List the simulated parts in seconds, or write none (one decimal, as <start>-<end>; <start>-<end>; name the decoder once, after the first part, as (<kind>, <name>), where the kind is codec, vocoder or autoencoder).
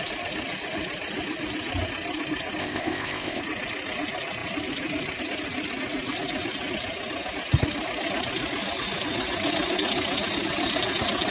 2.6-3.4 (codec, ZipCodec)